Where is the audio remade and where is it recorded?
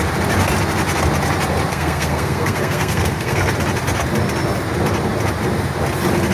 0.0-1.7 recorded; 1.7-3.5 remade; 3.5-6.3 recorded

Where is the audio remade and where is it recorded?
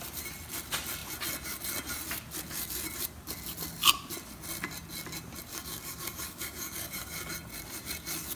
0.0-5.5 recorded; 5.5-7.3 remade; 7.3-8.4 recorded